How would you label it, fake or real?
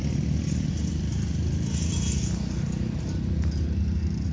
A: real